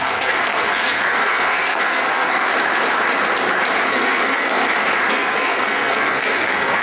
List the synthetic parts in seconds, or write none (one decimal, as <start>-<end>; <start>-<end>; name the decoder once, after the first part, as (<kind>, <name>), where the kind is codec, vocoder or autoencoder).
0.0-2.5 (codec, SNAC); 3.9-4.6; 5.1-6.8